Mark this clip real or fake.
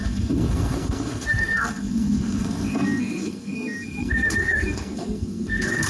fake